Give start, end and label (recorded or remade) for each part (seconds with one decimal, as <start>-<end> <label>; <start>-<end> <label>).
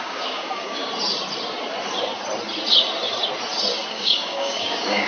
0.0-0.8 remade; 0.8-3.9 recorded; 3.9-5.1 remade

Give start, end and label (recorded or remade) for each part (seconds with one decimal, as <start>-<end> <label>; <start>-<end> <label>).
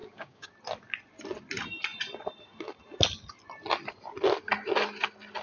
0.0-0.5 remade; 0.5-5.4 recorded